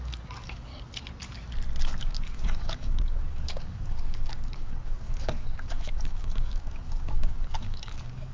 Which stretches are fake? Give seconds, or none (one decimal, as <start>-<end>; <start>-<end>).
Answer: 0.0-0.7; 2.0-8.3